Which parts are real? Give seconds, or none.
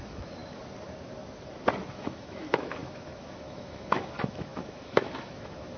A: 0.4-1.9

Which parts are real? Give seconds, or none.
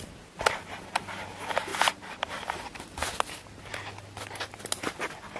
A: 0.0-5.4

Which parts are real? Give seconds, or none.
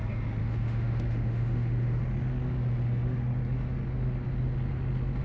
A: 0.0-0.4; 2.0-5.2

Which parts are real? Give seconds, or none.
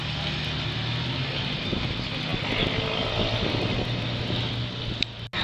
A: 0.0-5.4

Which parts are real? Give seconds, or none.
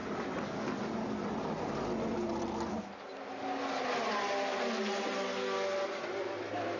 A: 0.0-6.8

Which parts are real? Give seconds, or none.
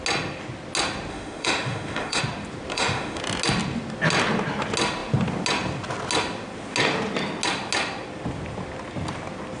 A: 0.0-1.1; 2.2-2.7; 3.2-9.6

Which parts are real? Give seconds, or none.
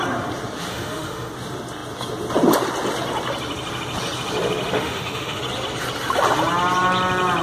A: 0.0-0.7; 1.3-4.8; 5.4-7.4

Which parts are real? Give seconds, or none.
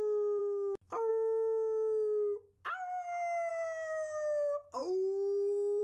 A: 0.0-0.4; 1.1-5.8